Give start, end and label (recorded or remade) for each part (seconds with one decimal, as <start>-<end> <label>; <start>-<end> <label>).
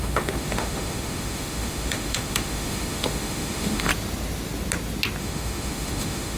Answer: 0.0-3.9 remade; 3.9-5.2 recorded; 5.2-6.4 remade